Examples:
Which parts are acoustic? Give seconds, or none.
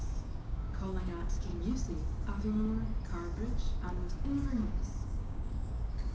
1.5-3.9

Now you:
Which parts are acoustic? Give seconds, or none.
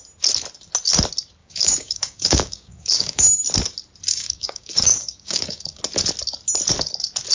0.0-1.4; 3.4-4.1; 5.8-7.3